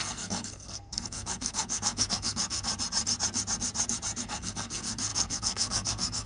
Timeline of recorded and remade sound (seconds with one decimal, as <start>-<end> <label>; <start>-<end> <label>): 0.0-2.7 remade; 2.7-4.2 recorded; 4.2-6.3 remade